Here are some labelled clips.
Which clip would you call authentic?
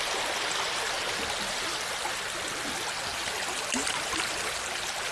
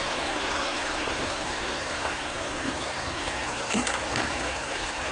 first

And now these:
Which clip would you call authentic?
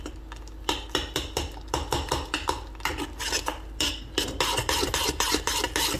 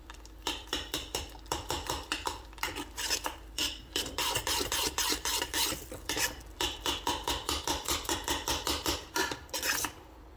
first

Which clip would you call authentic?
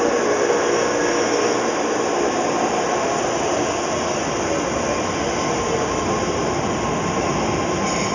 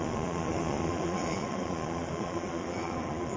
first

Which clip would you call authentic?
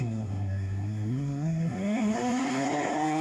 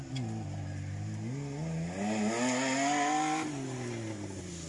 second